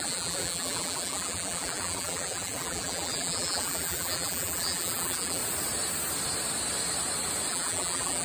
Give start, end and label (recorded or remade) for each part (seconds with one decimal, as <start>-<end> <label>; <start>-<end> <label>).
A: 0.0-5.4 remade; 5.4-7.5 recorded; 7.5-8.2 remade